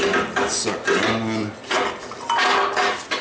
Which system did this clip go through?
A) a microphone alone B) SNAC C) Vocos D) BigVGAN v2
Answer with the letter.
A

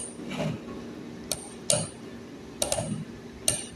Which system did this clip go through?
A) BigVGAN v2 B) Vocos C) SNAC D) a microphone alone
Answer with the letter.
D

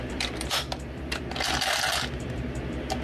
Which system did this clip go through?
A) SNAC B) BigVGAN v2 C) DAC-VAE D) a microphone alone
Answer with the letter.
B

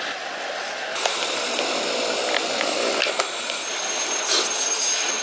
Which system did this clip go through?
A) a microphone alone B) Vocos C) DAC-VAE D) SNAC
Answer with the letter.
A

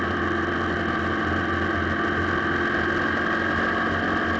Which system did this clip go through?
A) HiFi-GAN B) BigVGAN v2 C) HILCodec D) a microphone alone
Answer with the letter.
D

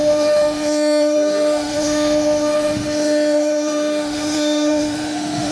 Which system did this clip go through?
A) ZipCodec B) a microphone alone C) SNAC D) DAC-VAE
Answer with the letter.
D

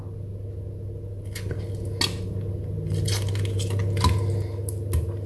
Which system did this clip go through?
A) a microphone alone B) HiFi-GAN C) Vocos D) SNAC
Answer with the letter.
A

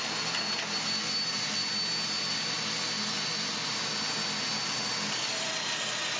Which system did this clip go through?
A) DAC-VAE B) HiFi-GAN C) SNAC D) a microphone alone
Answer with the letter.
D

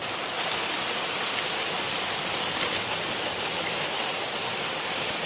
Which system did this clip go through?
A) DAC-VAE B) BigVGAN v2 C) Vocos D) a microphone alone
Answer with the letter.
D